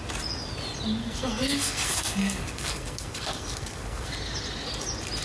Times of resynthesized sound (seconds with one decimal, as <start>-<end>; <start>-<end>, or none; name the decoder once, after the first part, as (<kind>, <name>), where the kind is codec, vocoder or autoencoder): 1.0-4.1 (codec, SNAC)